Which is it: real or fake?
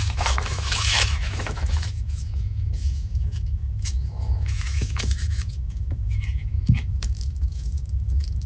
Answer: fake